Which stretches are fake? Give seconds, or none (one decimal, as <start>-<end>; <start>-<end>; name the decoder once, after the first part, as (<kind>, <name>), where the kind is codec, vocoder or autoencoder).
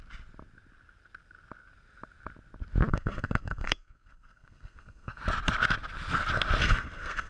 2.9-5.2 (codec, SNAC); 6.6-7.3